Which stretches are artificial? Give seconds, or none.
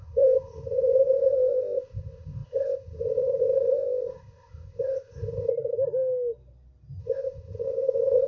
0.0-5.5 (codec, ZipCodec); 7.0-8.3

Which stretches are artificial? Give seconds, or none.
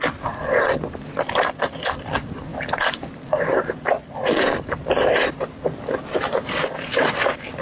none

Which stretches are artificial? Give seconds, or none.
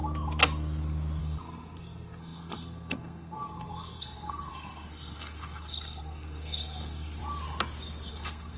1.2-7.2 (codec, SNAC); 8.1-8.6